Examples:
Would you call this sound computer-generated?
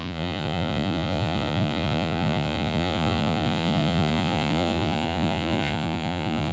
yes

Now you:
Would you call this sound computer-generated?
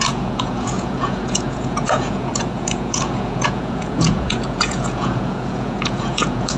yes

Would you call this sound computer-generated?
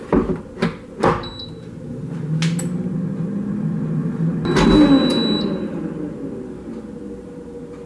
no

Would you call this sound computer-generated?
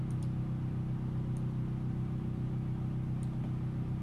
no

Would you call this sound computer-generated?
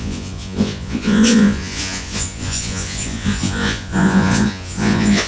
yes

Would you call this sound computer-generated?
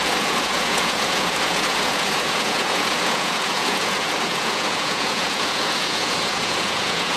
yes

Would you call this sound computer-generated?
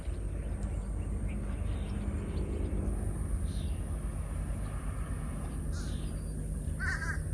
no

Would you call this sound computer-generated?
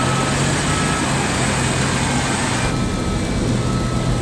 no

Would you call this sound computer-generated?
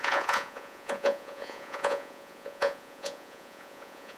yes